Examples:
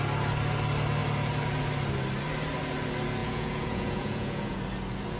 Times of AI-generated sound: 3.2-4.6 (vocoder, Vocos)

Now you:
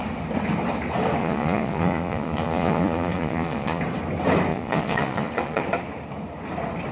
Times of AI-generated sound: 1.2-3.8 (vocoder, Vocos); 4.5-5.6

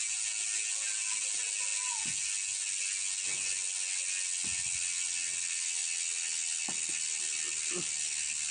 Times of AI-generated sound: none

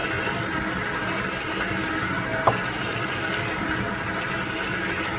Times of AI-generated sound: none

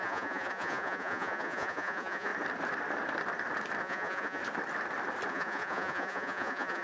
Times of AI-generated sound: 0.0-2.3 (vocoder, Vocos); 3.8-4.4; 5.3-6.8

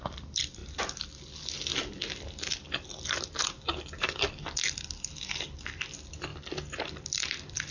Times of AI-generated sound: none

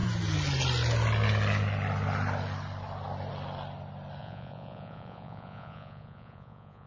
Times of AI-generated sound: 4.2-6.9 (vocoder, Vocos)